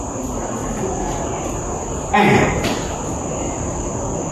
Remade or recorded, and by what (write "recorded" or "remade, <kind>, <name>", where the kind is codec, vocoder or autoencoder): recorded